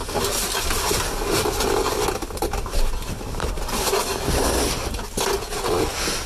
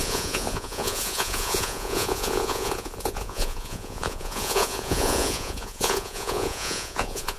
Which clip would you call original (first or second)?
first